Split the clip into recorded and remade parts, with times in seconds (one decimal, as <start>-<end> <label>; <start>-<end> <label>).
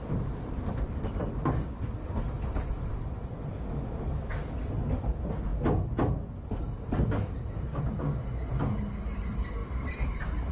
0.0-2.5 recorded; 2.5-3.6 remade; 3.6-9.6 recorded; 9.6-10.5 remade